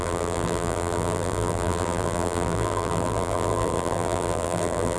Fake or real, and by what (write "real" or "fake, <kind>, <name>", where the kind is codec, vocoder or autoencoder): fake, vocoder, BigVGAN v2